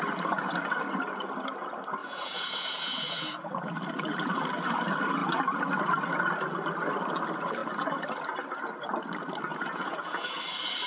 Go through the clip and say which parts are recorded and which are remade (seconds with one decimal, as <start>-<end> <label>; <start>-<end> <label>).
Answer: 0.0-2.0 recorded; 2.0-3.5 remade; 3.5-9.5 recorded; 9.5-10.4 remade; 10.4-10.9 recorded